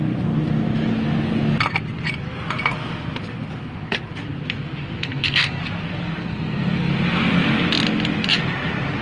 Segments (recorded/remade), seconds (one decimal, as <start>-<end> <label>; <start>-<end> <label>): 0.0-5.0 recorded; 5.0-5.6 remade; 5.6-6.2 recorded; 6.2-6.9 remade; 6.9-9.0 recorded